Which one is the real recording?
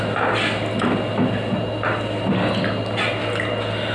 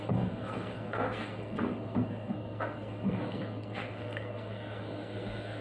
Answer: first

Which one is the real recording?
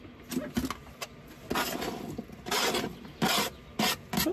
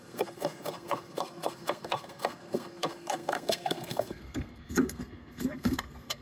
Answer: first